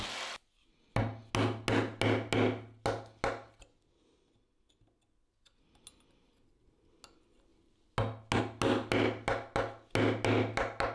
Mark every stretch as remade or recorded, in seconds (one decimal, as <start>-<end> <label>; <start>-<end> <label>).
0.0-10.9 recorded